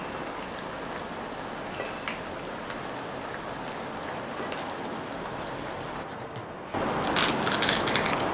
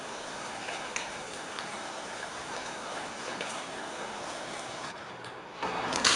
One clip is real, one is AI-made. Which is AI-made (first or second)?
second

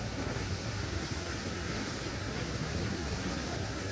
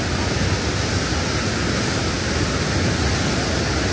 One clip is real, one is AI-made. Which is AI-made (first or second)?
first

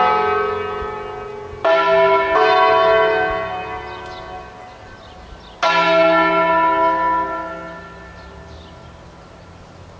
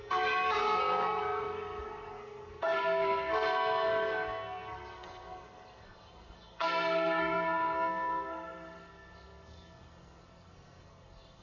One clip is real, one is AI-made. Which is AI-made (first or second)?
second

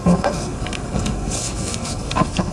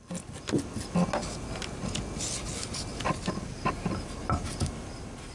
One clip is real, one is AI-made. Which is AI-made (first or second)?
first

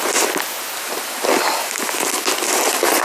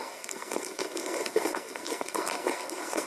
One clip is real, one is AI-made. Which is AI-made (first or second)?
second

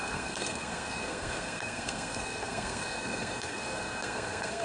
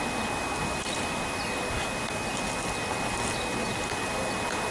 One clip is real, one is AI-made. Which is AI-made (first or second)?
first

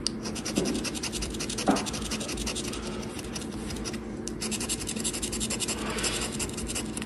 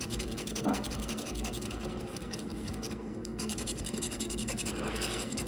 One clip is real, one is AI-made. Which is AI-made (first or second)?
second